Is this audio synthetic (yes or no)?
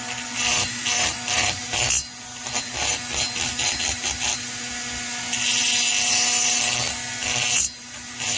no